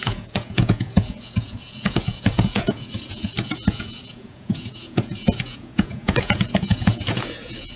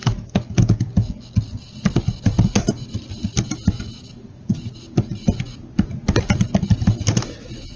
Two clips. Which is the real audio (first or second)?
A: second